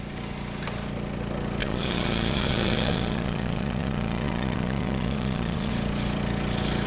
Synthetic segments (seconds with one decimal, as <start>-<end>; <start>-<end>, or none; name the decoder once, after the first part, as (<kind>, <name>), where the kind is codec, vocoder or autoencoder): 1.6-5.7 (vocoder, Vocos)